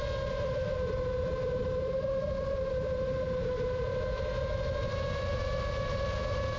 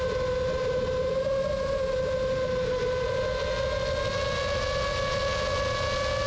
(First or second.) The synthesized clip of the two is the first